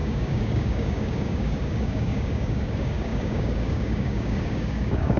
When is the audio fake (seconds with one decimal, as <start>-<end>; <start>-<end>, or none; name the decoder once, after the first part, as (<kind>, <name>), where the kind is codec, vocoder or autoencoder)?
0.0-5.2 (codec, DAC)